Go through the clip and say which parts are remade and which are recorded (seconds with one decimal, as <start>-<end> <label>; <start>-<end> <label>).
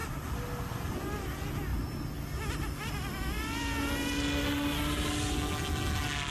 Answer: 0.0-6.3 recorded